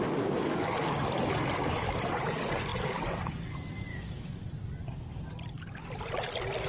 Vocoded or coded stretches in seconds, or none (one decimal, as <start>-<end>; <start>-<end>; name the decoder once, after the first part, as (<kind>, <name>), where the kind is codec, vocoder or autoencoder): 3.9-4.4 (autoencoder, DAC-VAE)